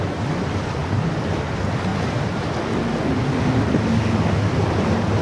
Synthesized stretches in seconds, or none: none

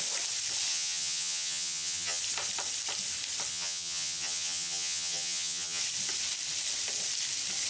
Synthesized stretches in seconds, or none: 0.7-2.2 (vocoder, HiFi-GAN); 3.5-5.8